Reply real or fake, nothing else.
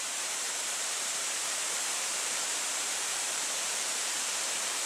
fake